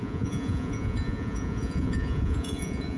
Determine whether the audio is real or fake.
fake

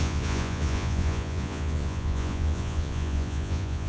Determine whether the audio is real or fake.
fake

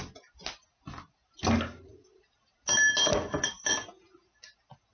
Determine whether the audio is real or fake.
real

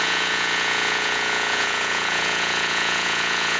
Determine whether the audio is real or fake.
fake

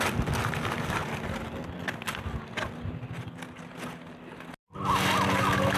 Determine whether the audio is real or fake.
real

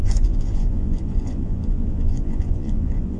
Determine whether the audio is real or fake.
fake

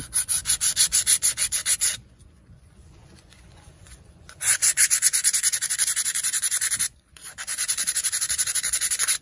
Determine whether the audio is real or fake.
fake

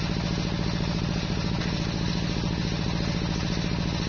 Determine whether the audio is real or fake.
real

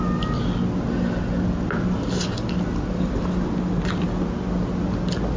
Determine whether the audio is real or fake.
real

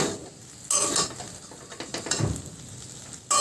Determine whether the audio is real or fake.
real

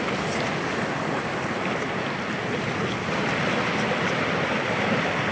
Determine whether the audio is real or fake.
real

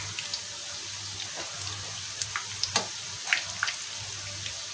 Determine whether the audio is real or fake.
real